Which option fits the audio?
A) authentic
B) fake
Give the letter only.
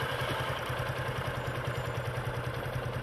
A